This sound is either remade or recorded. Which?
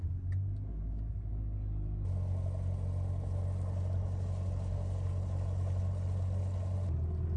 recorded